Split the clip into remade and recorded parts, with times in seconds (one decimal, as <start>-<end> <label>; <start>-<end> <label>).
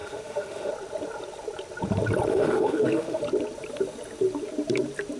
0.0-0.7 remade; 0.7-2.3 recorded; 2.3-3.2 remade; 3.2-5.2 recorded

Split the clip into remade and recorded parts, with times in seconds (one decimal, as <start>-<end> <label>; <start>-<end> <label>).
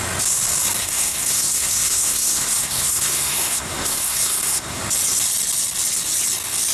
0.0-0.8 recorded; 0.8-4.8 remade; 4.8-6.7 recorded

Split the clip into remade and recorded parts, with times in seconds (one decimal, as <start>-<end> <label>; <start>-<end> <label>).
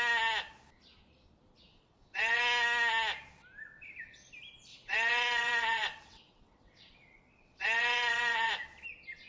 0.0-1.7 recorded; 1.7-2.4 remade; 2.4-4.7 recorded; 4.7-8.5 remade; 8.5-9.3 recorded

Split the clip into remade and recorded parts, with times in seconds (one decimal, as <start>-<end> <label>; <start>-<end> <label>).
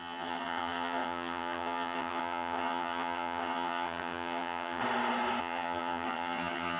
0.0-4.8 remade; 4.8-5.4 recorded; 5.4-6.8 remade